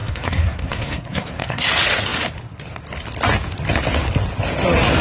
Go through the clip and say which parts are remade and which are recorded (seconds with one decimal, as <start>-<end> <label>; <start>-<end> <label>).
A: 0.0-1.7 remade; 1.7-5.0 recorded